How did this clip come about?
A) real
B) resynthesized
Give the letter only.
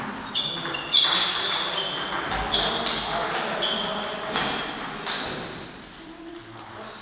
A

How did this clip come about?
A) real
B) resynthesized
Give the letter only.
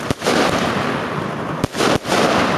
A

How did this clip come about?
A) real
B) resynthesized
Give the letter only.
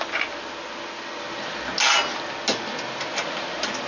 A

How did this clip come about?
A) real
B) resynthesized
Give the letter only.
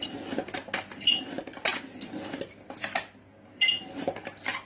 A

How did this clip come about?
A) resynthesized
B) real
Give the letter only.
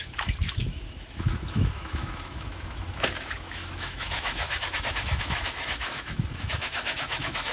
A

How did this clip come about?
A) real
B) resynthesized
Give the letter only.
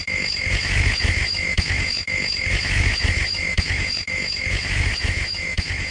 B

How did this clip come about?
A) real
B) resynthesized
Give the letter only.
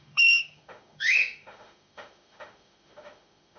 B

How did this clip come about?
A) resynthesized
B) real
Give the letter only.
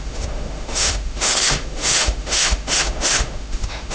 A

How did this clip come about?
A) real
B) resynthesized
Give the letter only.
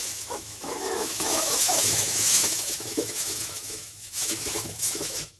B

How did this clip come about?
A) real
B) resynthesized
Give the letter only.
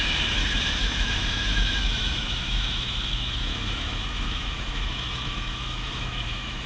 B